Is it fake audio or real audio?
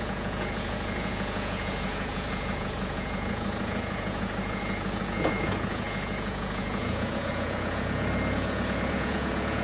fake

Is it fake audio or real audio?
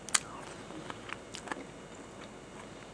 real